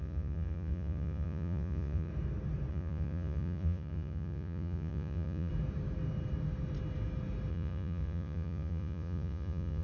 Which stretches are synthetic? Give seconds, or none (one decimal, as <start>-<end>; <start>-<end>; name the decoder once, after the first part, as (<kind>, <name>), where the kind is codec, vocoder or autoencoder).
0.0-2.1 (vocoder, Vocos); 2.7-5.5; 7.5-9.8